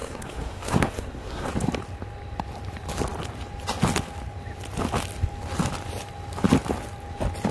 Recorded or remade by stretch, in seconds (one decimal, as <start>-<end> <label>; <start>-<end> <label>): 0.0-1.5 remade; 1.5-7.5 recorded